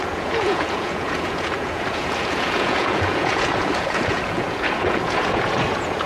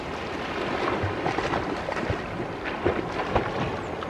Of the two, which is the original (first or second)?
second